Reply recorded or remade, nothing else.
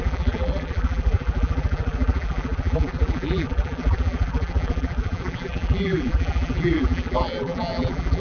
remade